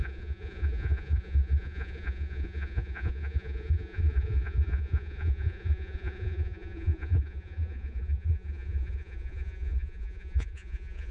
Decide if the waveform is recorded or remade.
remade